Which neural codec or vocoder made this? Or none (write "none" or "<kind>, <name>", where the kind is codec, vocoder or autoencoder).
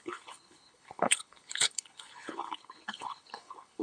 codec, HILCodec